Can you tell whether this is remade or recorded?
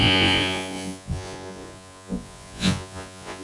remade